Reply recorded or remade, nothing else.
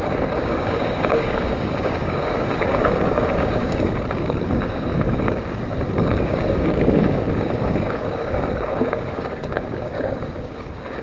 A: remade